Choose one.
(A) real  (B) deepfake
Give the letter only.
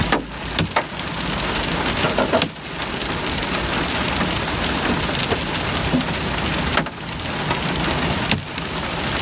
A